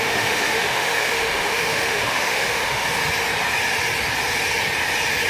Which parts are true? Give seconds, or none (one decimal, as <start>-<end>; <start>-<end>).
3.0-5.3